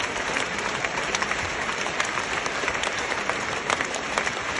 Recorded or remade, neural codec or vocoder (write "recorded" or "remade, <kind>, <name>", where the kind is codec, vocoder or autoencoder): remade, vocoder, BigVGAN v2